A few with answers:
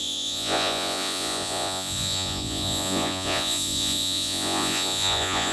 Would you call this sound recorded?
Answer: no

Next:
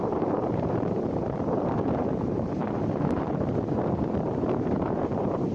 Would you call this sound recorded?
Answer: no